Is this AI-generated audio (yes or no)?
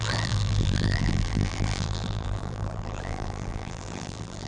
yes